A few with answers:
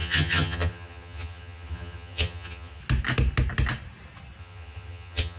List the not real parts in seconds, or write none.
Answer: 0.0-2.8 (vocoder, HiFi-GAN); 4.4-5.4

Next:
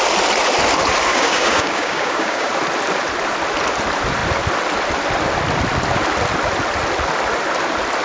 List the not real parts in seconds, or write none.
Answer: 1.1-2.5 (codec, DAC)

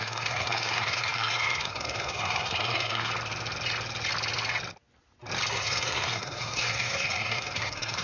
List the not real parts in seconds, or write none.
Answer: 0.0-3.1 (codec, SNAC); 5.5-8.0

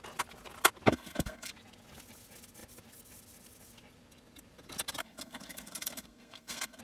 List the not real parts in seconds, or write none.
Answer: 0.9-1.5 (codec, SNAC); 5.0-6.8

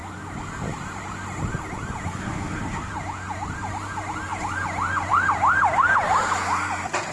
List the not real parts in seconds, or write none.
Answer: 2.1-2.9 (autoencoder, DAC-VAE)